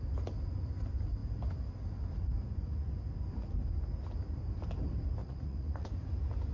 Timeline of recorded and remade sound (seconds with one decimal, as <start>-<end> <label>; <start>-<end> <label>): 0.0-5.2 recorded; 5.2-5.9 remade; 5.9-6.5 recorded